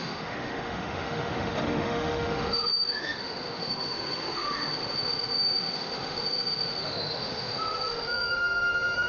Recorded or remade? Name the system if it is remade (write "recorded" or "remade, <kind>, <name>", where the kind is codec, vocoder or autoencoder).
remade, autoencoder, DAC-VAE